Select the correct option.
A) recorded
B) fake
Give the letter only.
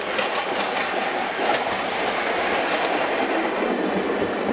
A